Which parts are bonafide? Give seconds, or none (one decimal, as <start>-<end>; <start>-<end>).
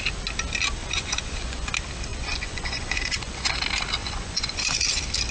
0.0-0.8; 1.7-2.1; 3.6-4.0; 4.8-5.3